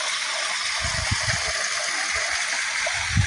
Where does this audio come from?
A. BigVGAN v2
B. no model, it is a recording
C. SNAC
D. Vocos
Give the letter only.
B